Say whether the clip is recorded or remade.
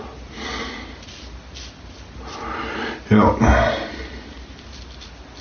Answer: recorded